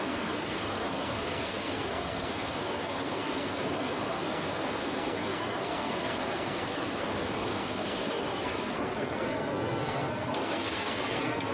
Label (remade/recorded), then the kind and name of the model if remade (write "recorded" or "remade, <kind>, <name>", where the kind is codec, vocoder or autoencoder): remade, codec, SNAC